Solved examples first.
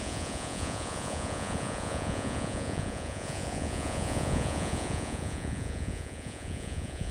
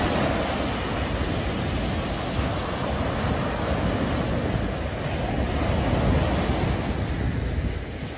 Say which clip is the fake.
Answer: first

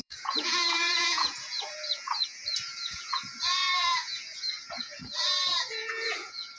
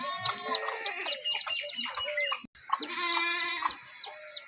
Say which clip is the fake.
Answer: first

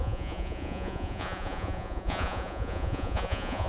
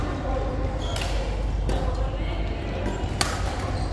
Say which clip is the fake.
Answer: first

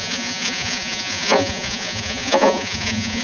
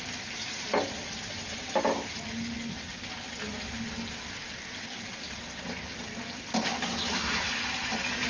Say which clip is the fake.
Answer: first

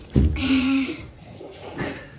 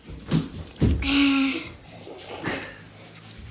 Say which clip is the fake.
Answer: first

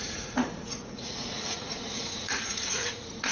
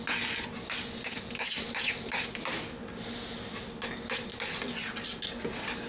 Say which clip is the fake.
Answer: first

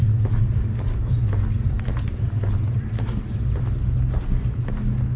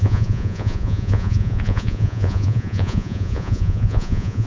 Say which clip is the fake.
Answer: second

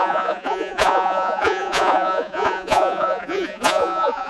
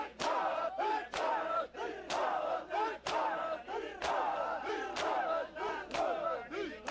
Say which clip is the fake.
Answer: first